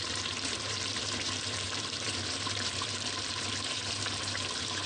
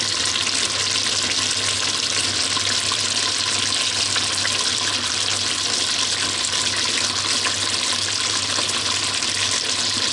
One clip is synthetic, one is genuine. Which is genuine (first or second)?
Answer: second